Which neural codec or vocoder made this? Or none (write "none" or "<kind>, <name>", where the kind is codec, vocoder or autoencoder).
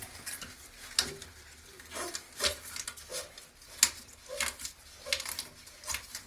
none